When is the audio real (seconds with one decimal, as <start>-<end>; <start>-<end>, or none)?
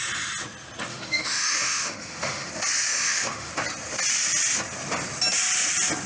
0.0-0.9; 2.5-2.9; 3.5-6.1